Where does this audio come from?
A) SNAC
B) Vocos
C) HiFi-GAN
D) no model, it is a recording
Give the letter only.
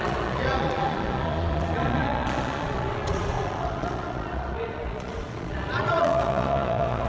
B